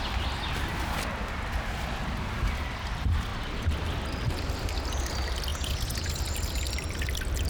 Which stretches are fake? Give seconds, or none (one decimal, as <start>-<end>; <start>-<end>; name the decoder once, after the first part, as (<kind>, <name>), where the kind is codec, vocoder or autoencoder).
5.5-6.2 (vocoder, Vocos)